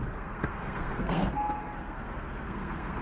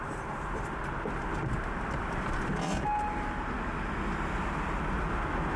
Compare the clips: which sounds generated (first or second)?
first